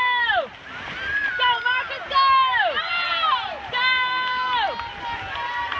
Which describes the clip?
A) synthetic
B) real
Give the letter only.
B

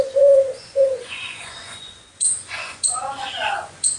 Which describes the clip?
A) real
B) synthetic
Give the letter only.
B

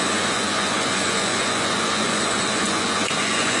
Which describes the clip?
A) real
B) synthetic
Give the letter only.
B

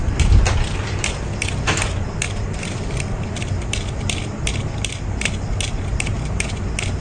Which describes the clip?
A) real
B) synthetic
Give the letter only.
A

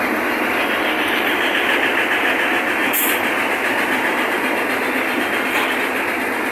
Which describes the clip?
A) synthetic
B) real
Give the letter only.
B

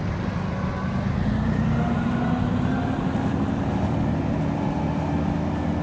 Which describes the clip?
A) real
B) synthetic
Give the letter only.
A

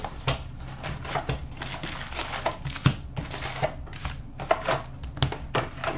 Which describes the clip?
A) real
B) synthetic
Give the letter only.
A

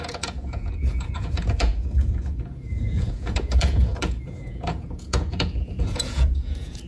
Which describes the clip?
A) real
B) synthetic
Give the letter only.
B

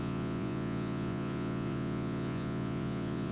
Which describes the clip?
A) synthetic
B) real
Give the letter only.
A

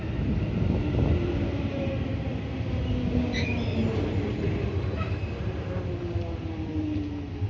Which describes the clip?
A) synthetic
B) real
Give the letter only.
B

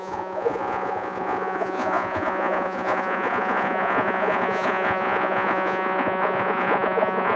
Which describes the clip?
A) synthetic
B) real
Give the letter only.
A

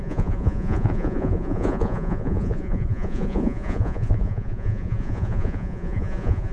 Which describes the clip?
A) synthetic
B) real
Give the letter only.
A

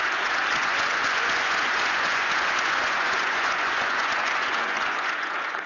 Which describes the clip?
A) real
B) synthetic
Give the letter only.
B